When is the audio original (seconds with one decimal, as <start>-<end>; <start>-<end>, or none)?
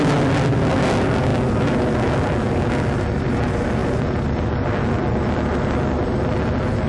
0.0-6.9